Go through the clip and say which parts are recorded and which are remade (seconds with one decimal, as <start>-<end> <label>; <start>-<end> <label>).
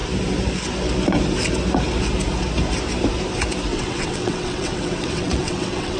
0.0-3.7 recorded; 3.7-6.0 remade